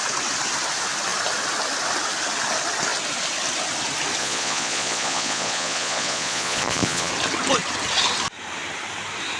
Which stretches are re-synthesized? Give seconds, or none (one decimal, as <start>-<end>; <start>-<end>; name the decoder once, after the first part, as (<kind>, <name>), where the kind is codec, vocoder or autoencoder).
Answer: 4.2-7.1 (vocoder, Vocos)